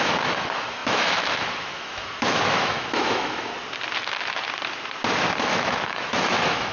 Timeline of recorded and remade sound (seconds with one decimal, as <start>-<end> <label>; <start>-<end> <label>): 0.0-3.5 remade; 3.5-5.4 recorded; 5.4-6.7 remade